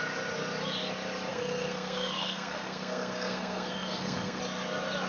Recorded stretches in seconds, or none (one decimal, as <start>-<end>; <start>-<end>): 0.0-1.3; 4.4-5.1